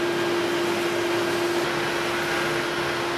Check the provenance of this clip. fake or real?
real